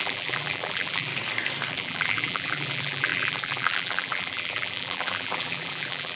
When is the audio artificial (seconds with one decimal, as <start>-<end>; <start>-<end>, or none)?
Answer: 0.0-1.1; 1.7-6.2